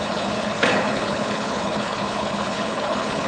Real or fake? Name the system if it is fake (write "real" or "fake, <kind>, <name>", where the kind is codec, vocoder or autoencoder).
fake, codec, HILCodec